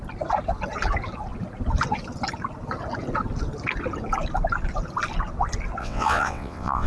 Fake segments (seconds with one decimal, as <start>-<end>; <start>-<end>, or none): 5.8-6.9